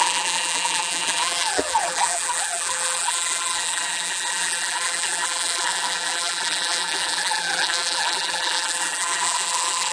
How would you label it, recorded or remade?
remade